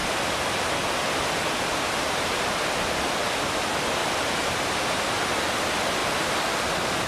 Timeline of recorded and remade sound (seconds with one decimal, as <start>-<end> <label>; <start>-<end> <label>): 0.0-4.0 recorded; 4.0-4.6 remade; 4.6-7.1 recorded